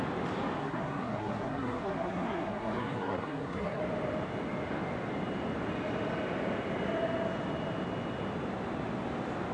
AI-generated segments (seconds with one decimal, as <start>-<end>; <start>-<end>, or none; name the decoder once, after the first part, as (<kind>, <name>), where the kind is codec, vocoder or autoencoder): 0.6-3.8 (codec, SNAC)